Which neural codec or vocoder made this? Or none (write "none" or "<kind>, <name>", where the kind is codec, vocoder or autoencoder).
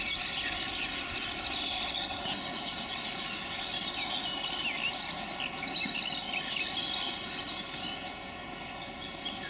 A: none